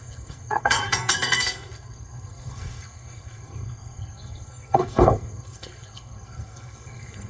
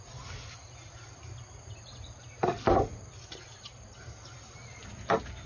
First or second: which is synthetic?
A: first